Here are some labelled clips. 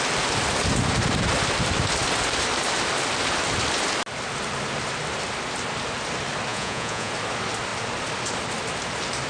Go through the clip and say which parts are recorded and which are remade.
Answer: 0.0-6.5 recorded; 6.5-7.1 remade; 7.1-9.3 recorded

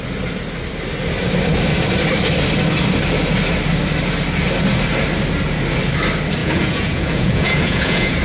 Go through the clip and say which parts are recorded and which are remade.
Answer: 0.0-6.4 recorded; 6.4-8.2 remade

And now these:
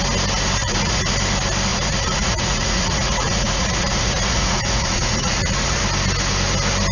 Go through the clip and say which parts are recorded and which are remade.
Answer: 0.0-0.6 recorded; 0.6-1.1 remade; 1.1-1.7 recorded; 1.7-5.8 remade; 5.8-6.9 recorded

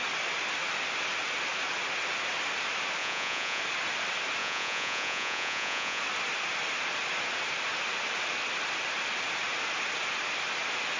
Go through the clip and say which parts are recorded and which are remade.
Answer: 0.0-3.0 recorded; 3.0-3.6 remade; 3.6-4.4 recorded; 4.4-6.0 remade; 6.0-11.0 recorded